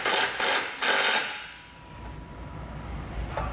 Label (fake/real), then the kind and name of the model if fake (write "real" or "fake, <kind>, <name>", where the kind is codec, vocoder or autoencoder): real